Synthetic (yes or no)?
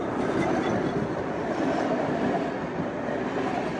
no